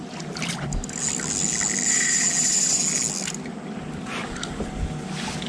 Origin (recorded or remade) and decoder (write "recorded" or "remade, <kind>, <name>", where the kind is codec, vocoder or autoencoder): recorded